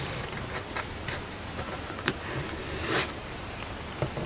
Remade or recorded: recorded